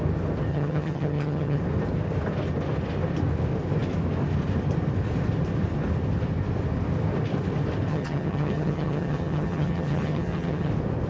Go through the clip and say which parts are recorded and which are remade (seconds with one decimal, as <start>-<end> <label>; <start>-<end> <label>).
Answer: 0.0-0.5 recorded; 0.5-1.6 remade; 1.6-7.9 recorded; 7.9-10.7 remade; 10.7-11.1 recorded